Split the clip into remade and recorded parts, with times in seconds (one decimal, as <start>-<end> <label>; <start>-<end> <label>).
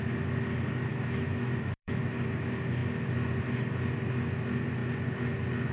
0.0-0.9 recorded; 0.9-2.1 remade; 2.1-5.7 recorded